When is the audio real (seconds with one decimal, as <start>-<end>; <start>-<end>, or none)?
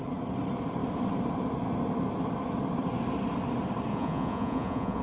0.0-3.9